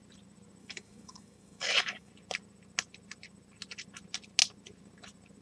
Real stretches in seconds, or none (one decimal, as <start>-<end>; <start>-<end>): 0.0-0.6; 2.1-5.4